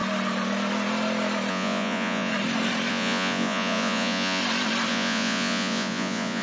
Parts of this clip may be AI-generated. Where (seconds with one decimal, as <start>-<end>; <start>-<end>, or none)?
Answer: 1.5-2.3; 2.9-4.4; 4.9-6.4